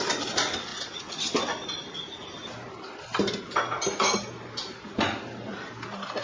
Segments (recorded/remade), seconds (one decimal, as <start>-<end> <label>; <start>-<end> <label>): 0.0-6.2 recorded